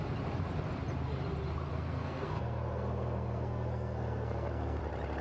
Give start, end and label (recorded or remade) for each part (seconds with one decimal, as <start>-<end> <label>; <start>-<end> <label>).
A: 0.0-1.7 recorded; 1.7-4.8 remade; 4.8-5.2 recorded

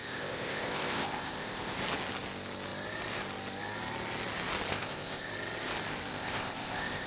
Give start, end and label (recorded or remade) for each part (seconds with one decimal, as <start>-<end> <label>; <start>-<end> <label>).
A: 0.0-1.8 remade; 1.8-4.7 recorded; 4.7-5.3 remade; 5.3-6.1 recorded; 6.1-7.1 remade

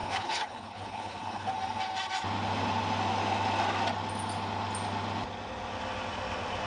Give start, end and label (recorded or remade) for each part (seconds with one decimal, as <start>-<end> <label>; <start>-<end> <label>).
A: 0.0-1.5 remade; 1.5-6.7 recorded